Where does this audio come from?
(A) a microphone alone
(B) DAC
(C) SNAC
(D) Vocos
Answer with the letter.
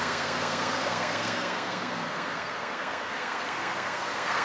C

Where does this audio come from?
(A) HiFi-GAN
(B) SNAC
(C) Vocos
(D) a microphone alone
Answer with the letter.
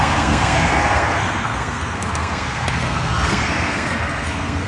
B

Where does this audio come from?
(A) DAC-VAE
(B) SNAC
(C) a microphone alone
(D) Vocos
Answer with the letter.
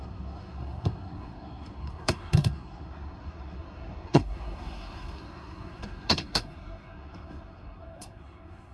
B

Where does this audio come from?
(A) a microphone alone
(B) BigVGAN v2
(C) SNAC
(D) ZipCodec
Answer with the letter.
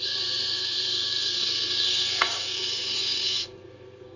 C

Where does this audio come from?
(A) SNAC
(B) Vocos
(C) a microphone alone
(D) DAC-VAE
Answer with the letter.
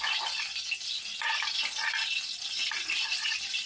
C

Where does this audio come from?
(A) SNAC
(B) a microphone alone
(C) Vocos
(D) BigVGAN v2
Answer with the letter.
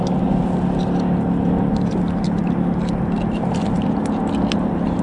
B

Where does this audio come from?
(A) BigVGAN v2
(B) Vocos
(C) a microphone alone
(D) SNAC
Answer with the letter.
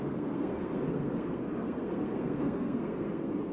D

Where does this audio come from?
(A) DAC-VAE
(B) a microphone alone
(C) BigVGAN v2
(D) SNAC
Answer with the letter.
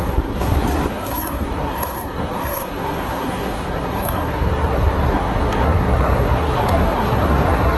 D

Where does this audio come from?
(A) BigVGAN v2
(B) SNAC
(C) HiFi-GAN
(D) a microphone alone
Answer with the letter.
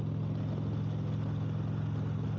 D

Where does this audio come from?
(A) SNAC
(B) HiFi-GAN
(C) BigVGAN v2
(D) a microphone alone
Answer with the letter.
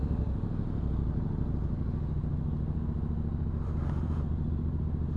D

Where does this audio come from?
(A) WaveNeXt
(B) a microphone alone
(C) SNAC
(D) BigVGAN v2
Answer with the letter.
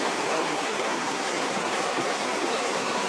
C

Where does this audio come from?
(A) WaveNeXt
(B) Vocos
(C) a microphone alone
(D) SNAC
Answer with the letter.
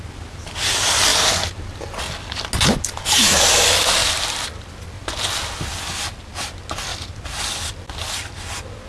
C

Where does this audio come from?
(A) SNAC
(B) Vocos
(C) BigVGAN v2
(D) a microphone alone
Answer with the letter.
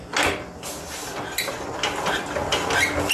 D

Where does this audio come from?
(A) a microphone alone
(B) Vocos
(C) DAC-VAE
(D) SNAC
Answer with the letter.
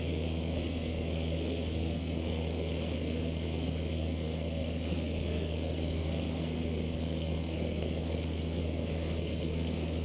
D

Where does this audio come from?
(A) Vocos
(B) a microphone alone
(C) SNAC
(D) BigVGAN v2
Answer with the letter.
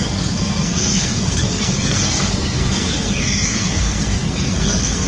C